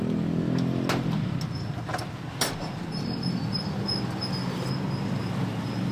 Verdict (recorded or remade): recorded